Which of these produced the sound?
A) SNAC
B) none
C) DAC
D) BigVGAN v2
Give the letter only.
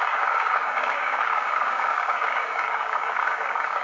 C